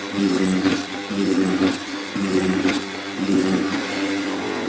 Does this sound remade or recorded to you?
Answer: remade